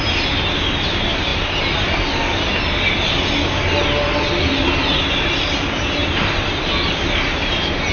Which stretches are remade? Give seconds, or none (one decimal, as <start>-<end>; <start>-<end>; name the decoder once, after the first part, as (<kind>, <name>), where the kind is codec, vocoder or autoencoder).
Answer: none